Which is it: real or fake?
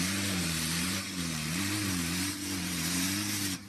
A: fake